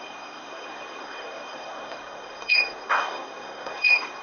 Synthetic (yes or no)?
yes